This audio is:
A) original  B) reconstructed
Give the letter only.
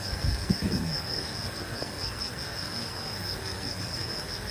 B